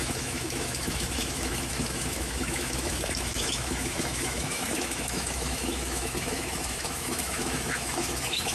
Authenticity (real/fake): fake